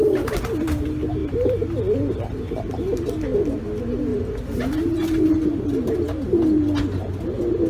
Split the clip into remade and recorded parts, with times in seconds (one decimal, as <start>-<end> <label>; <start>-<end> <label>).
0.0-1.2 recorded; 1.2-3.4 remade; 3.4-7.7 recorded